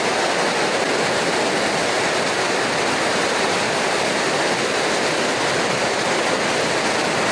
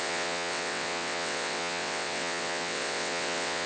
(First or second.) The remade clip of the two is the second